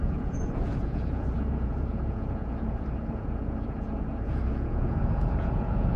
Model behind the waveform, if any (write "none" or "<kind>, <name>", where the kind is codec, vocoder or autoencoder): vocoder, Vocos